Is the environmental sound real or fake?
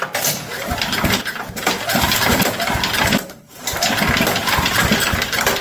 real